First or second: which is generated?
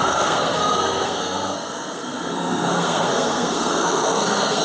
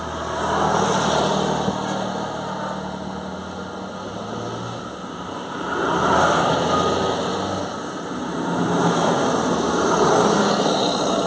first